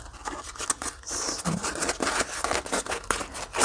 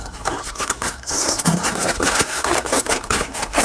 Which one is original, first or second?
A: first